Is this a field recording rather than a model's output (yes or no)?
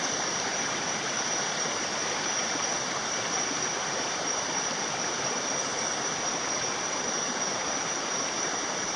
no